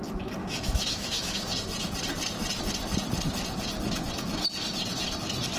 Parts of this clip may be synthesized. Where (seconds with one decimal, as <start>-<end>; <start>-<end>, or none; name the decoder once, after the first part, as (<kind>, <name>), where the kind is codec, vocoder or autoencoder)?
0.4-1.5 (autoencoder, DAC-VAE)